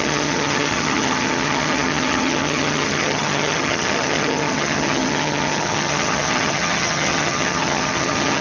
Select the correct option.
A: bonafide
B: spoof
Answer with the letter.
B